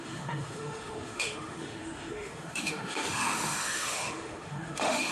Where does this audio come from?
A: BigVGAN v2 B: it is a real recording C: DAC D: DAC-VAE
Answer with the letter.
D